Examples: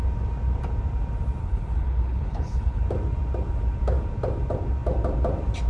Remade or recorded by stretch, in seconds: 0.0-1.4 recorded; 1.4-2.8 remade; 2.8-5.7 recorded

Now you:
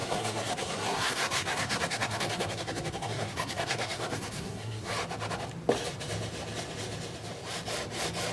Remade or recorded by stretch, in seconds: 0.0-4.9 remade; 4.9-8.3 recorded

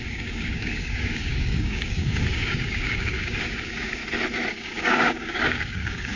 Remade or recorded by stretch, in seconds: 0.0-4.0 remade; 4.0-4.5 recorded; 4.5-6.2 remade

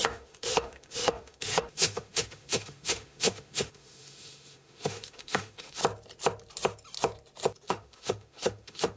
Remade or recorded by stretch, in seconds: 0.0-5.8 remade; 5.8-7.7 recorded; 7.7-9.0 remade

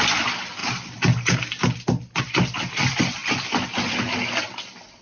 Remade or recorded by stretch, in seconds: 0.0-5.0 recorded

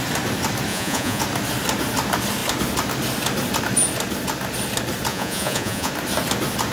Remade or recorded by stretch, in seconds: 0.0-0.7 recorded; 0.7-1.2 remade; 1.2-5.1 recorded; 5.1-5.9 remade; 5.9-6.7 recorded

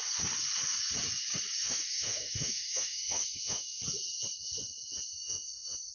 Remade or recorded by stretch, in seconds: 0.0-1.6 recorded; 1.6-3.8 remade; 3.8-5.1 recorded; 5.1-5.9 remade

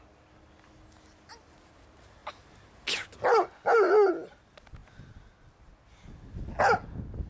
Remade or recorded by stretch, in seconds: 0.0-7.3 recorded